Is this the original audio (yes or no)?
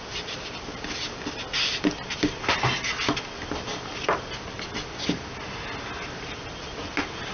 yes